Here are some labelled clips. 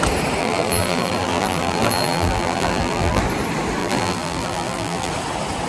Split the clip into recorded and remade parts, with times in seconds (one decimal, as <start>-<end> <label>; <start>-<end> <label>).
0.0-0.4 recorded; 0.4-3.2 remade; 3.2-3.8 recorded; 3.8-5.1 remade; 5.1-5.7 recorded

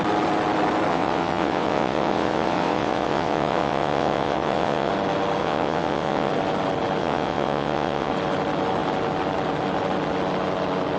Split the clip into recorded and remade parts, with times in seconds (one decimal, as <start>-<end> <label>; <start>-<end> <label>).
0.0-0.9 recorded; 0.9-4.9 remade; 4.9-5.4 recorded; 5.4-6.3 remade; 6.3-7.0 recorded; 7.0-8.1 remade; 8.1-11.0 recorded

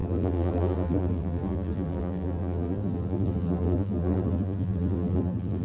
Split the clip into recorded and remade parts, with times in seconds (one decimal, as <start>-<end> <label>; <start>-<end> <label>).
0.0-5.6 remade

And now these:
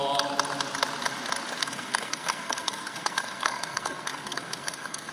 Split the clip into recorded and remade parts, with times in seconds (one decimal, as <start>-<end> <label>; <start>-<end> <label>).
0.0-1.6 recorded; 1.6-5.1 remade

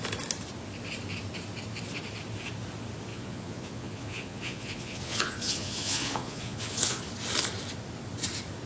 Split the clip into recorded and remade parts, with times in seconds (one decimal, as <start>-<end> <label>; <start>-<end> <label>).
0.0-3.1 recorded; 3.1-7.0 remade; 7.0-8.7 recorded